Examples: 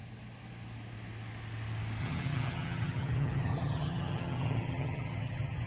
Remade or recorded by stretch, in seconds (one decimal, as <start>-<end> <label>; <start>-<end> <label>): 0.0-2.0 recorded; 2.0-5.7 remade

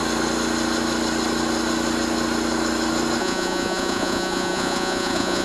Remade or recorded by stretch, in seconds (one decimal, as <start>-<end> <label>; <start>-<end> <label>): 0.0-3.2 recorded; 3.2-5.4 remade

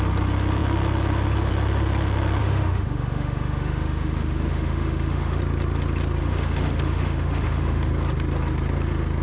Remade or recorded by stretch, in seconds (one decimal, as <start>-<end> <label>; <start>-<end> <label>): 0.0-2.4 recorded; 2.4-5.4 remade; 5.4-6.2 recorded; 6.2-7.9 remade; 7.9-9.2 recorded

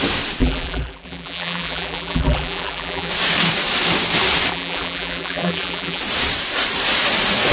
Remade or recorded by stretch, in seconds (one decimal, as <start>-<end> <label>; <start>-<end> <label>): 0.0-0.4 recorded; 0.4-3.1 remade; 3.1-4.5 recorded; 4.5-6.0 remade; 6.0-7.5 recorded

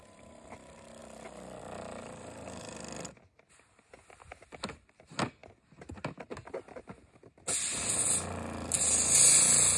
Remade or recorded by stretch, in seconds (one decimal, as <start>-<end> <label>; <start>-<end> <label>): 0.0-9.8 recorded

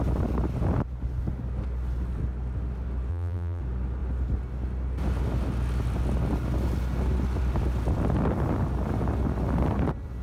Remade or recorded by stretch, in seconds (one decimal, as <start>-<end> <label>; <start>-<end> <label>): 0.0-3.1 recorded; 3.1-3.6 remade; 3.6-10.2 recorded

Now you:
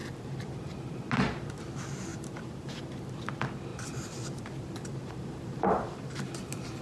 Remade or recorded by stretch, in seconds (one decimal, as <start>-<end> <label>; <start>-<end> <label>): 0.0-1.6 remade; 1.6-2.1 recorded; 2.1-3.1 remade; 3.1-3.7 recorded; 3.7-6.2 remade; 6.2-6.8 recorded

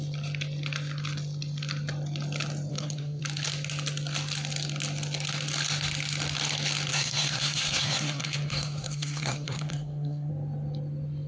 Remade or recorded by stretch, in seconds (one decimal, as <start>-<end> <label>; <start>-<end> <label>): 0.0-2.7 recorded; 2.7-3.2 remade; 3.2-6.9 recorded; 6.9-10.3 remade; 10.3-11.3 recorded